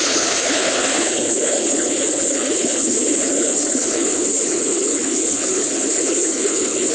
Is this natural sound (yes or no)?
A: no